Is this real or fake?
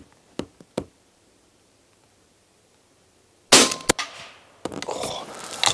real